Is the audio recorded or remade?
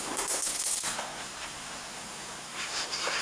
remade